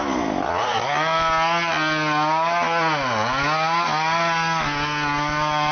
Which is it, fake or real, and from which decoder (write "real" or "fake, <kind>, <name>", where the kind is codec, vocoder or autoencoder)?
real